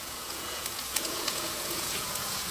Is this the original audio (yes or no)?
no